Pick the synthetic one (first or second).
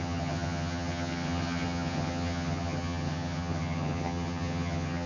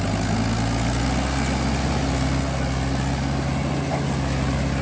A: first